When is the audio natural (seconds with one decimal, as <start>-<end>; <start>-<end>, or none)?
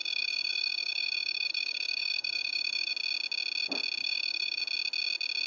2.9-4.0; 4.6-5.5